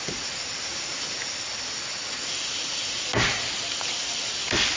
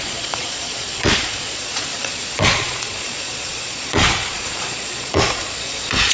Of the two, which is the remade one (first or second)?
second